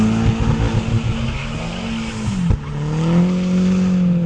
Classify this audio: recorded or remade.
recorded